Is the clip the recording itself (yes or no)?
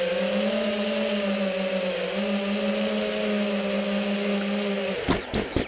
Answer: yes